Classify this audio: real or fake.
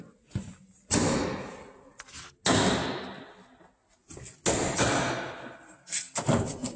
real